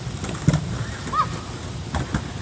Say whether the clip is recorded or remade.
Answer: recorded